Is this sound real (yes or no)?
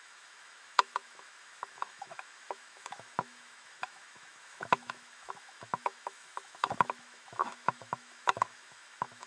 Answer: no